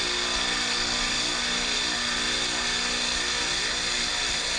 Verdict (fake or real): real